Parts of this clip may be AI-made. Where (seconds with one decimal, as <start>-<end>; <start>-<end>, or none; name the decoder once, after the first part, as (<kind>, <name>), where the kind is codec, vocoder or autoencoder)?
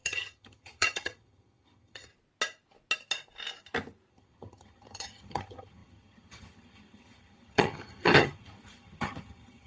0.0-2.1 (vocoder, HiFi-GAN); 4.1-9.7